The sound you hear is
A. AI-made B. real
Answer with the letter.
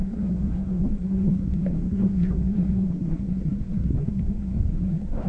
A